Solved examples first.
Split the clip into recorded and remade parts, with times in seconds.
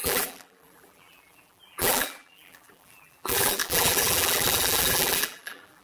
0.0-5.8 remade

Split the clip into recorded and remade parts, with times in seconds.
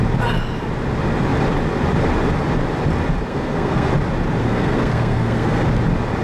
0.0-3.3 recorded; 3.3-3.9 remade; 3.9-4.4 recorded; 4.4-5.7 remade; 5.7-6.2 recorded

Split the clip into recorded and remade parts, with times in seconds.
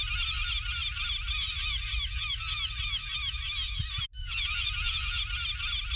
0.0-4.2 recorded; 4.2-5.2 remade; 5.2-6.0 recorded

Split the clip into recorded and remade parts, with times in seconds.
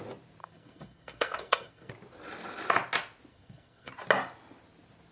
0.0-0.4 recorded; 0.4-1.9 remade; 1.9-3.3 recorded; 3.3-3.9 remade; 3.9-5.1 recorded